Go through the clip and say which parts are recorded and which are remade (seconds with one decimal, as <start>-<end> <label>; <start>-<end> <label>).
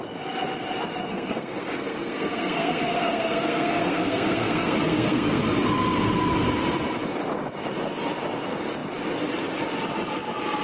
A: 0.0-1.1 recorded; 1.1-5.4 remade; 5.4-10.6 recorded